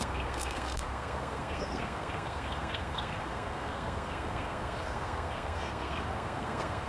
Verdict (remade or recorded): remade